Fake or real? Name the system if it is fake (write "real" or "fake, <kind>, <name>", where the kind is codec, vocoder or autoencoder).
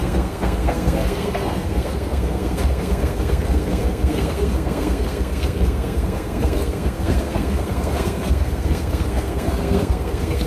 fake, codec, SNAC